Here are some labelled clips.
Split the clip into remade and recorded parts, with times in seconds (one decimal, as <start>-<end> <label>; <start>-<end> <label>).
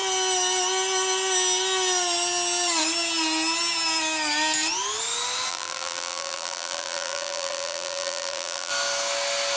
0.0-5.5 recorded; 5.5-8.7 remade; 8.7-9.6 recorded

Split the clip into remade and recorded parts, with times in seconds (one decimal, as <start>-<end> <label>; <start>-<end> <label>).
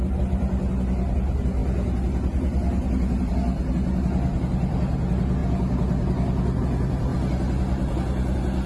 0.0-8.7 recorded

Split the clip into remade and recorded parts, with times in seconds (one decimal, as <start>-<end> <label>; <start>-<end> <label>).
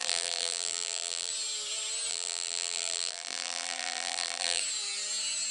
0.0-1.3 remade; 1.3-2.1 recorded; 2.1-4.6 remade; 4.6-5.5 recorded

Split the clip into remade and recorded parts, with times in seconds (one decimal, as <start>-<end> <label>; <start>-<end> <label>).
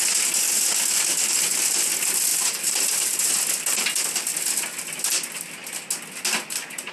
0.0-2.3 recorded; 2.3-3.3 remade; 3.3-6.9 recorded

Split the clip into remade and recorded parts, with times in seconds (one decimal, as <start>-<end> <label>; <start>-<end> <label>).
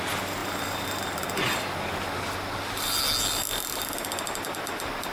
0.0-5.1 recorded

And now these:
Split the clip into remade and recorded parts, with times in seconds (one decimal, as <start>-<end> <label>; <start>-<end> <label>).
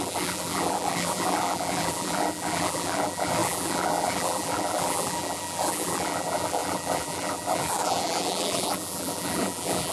0.0-9.9 remade